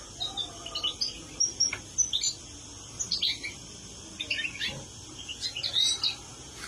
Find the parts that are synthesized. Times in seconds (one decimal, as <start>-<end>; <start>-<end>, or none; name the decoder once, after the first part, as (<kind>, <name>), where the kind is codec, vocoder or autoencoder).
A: none